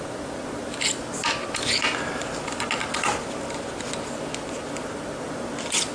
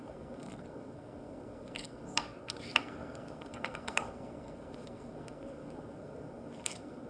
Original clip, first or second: first